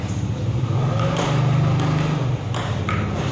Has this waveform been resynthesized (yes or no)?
no